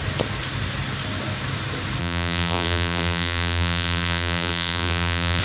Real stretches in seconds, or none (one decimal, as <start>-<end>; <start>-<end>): 0.0-2.0

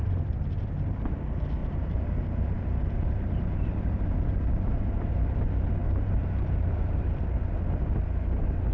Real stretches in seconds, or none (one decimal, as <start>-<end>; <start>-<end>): 0.0-1.6; 4.8-5.8; 7.2-8.7

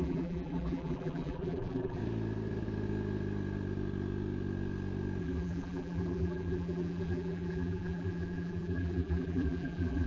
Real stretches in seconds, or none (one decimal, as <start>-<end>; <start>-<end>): 2.0-5.2

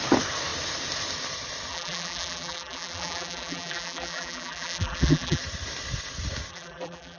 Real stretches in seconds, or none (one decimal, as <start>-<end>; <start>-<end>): 0.0-1.7; 5.4-6.5

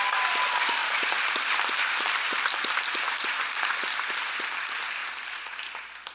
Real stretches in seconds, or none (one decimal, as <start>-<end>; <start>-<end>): 0.0-0.8; 4.0-5.0; 5.6-6.1

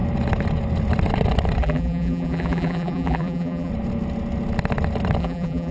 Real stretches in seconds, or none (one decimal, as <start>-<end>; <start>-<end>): 0.0-1.6; 3.7-5.2